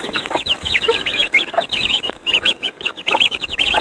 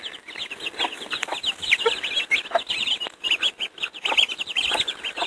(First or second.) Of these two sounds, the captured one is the second